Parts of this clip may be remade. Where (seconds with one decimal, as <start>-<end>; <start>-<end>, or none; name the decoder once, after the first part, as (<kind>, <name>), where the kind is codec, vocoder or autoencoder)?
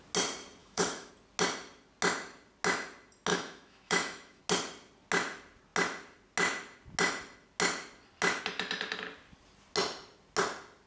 0.6-1.1 (autoencoder, DAC-VAE); 3.3-4.4